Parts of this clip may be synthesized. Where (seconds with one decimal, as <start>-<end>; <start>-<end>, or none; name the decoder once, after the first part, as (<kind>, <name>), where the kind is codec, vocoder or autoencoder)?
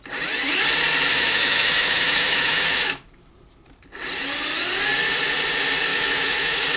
1.1-3.3 (autoencoder, DAC-VAE); 5.9-6.8